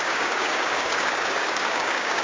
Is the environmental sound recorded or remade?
remade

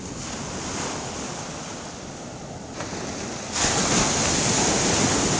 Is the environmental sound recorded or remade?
recorded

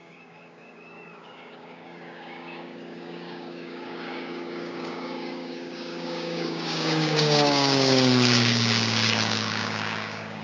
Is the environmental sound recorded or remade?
remade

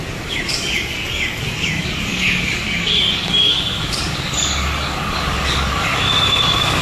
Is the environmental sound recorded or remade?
remade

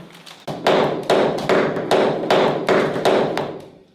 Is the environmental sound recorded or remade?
recorded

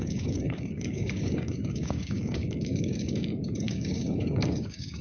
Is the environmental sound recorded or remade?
remade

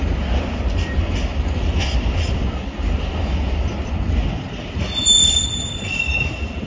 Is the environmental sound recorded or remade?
recorded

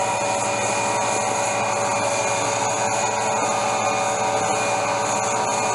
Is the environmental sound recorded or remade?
recorded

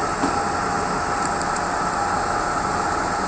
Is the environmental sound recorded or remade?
recorded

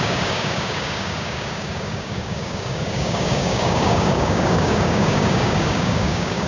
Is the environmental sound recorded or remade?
remade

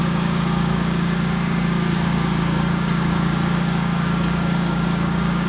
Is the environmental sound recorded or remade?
remade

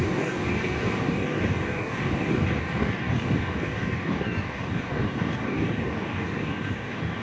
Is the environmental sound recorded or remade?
remade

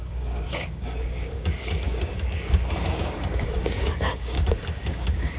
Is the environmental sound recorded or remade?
remade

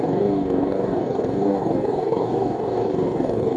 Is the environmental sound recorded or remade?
remade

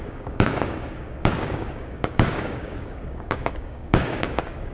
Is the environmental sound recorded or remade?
remade